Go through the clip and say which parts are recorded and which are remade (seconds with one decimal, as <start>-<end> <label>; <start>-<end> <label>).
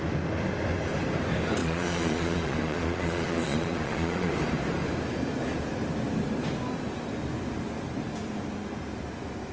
0.0-1.6 recorded; 1.6-4.3 remade; 4.3-9.5 recorded